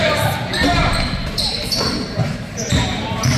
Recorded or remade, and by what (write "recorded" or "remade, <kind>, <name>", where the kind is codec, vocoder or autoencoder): remade, vocoder, BigVGAN v2